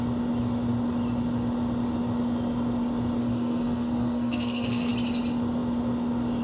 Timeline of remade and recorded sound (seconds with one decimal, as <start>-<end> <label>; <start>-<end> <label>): 0.0-3.2 recorded; 3.2-4.9 remade; 4.9-6.4 recorded